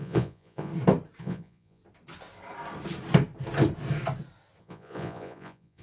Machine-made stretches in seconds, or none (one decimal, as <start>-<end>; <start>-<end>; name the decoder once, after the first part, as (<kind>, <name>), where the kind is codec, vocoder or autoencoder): 0.0-0.7 (vocoder, Vocos); 1.2-1.8; 4.6-5.8